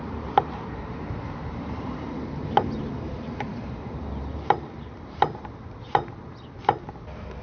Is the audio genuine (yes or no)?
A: no